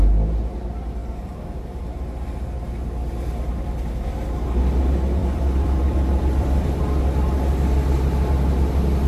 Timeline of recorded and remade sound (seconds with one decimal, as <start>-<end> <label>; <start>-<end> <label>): 0.0-5.2 recorded; 5.2-6.8 remade; 6.8-9.1 recorded